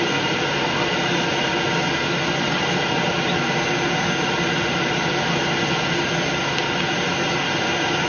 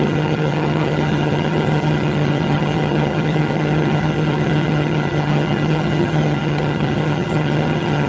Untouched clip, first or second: first